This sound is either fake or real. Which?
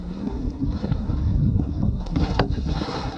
fake